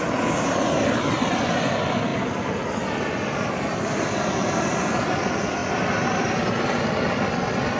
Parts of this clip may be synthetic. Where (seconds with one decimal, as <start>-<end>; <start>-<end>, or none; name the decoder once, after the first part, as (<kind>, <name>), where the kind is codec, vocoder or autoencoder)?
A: none